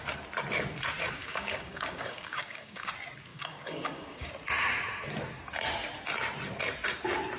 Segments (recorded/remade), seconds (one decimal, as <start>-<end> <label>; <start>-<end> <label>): 0.0-1.2 recorded; 1.2-2.9 remade; 2.9-3.3 recorded; 3.3-4.3 remade; 4.3-7.4 recorded